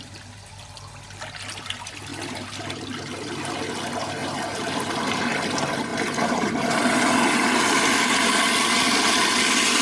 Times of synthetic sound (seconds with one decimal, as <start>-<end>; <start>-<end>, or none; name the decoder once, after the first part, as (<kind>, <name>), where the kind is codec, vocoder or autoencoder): 4.2-4.9 (vocoder, BigVGAN v2); 5.9-6.6